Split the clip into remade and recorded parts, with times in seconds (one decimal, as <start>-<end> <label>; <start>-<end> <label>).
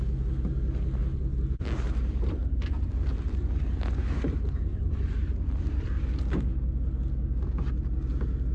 0.0-1.0 recorded; 1.0-3.6 remade; 3.6-4.7 recorded; 4.7-6.2 remade; 6.2-8.5 recorded